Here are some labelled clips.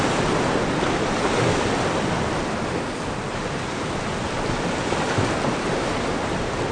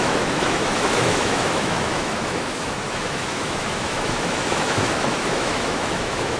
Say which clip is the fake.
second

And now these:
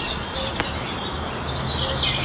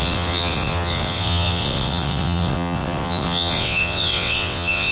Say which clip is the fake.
second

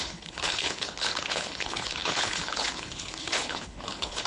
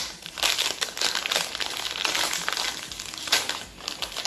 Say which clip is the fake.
first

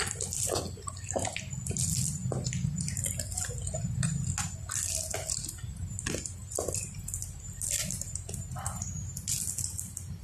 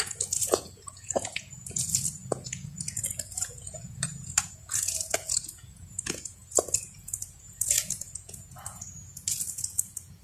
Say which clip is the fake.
second